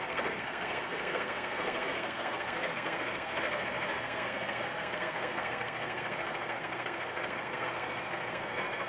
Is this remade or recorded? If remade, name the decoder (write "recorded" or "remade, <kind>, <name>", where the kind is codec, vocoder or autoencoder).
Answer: remade, codec, SNAC